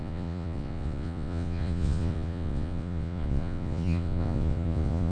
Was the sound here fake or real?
fake